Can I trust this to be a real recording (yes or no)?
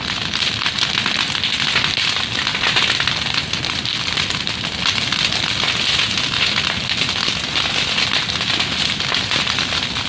yes